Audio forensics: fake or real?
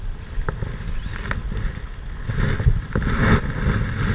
real